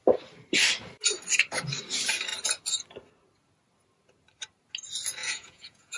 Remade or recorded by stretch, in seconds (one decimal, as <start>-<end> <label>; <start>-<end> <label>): 0.0-5.2 recorded; 5.2-6.0 remade